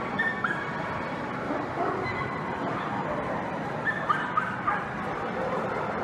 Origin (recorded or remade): recorded